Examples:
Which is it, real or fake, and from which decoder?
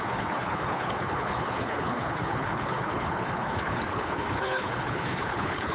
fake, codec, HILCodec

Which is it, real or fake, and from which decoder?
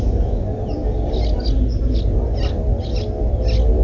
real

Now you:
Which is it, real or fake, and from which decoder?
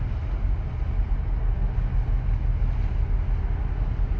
real